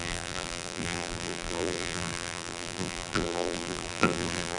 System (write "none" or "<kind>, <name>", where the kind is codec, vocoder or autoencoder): vocoder, BigVGAN v2